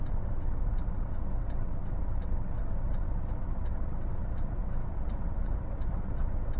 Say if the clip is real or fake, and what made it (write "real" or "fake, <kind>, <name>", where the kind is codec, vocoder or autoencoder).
fake, vocoder, WaveNeXt